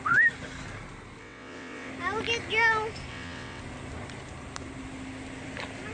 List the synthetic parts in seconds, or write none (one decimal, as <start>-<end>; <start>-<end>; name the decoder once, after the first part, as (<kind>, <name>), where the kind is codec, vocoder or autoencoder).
1.2-1.9 (vocoder, WaveNeXt); 3.1-3.6